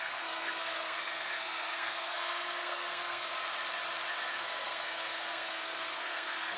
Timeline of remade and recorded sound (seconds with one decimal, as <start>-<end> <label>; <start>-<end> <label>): 0.0-3.3 remade; 3.3-4.3 recorded; 4.3-6.6 remade